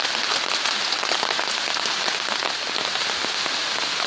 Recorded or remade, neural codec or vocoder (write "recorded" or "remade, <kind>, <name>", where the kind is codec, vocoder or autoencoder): recorded